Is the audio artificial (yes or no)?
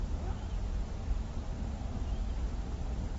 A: no